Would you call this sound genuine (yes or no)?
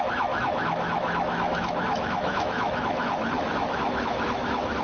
no